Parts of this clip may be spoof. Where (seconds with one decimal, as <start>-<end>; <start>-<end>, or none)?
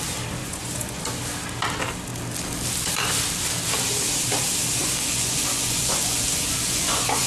0.4-1.0; 4.8-7.3